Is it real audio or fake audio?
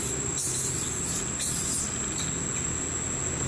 real